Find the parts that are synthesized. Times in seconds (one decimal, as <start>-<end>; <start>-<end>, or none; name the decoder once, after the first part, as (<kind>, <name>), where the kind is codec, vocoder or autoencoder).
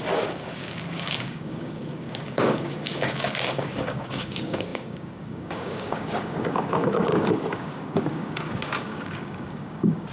0.0-10.1 (codec, DAC)